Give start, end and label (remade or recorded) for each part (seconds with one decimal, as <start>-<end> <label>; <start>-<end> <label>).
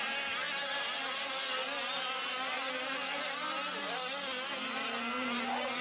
0.0-5.8 recorded